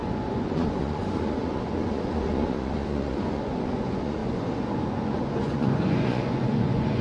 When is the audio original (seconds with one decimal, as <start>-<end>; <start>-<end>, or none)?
none